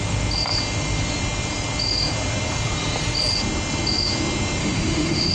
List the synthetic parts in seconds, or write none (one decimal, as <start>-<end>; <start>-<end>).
4.6-5.3